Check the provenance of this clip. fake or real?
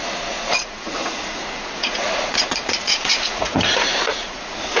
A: fake